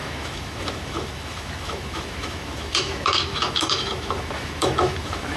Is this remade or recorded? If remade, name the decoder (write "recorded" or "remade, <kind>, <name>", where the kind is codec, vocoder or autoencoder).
remade, autoencoder, DAC-VAE